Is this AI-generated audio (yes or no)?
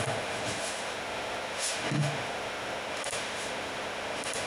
yes